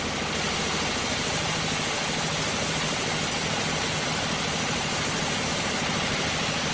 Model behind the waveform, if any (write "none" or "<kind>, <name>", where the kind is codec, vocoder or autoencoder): none